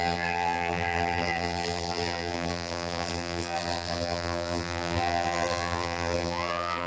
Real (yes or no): no